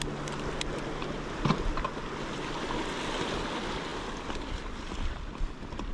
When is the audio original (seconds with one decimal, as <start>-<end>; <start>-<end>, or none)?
0.0-5.9

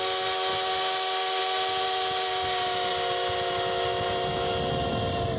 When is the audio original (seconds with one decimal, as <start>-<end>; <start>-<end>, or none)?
0.0-5.4

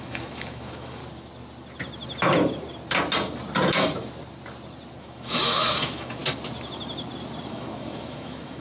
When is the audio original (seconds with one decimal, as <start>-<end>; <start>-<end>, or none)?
1.0-5.0; 6.2-7.5

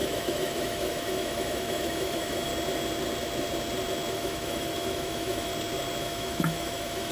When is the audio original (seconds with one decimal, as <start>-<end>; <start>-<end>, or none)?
2.5-4.1; 5.5-6.0

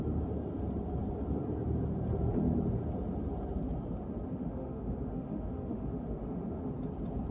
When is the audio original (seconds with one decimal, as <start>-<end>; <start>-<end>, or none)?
0.0-4.3; 6.7-7.3